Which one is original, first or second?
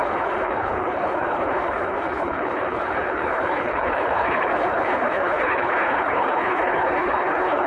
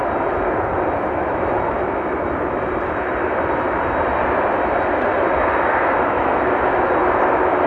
second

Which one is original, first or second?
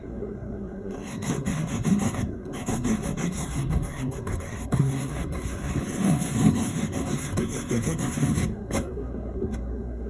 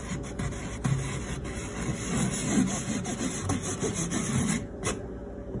second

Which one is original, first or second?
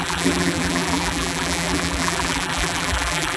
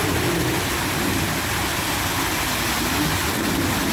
second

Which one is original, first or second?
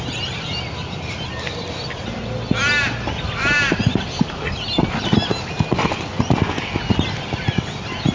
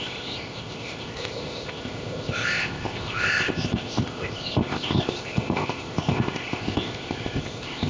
first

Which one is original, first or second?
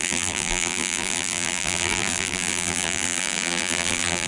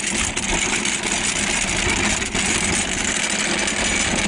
second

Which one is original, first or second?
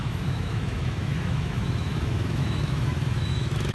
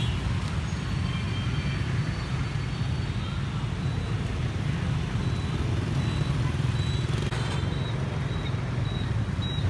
second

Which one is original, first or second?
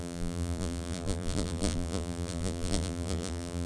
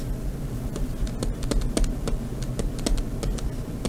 second